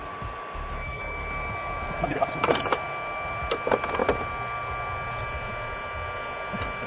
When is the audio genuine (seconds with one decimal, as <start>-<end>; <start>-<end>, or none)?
0.0-6.9